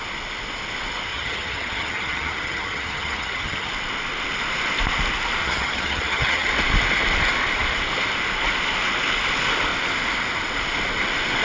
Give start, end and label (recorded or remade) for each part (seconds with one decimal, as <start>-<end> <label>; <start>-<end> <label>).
0.0-1.1 recorded; 1.1-3.7 remade; 3.7-5.4 recorded; 5.4-6.5 remade; 6.5-11.4 recorded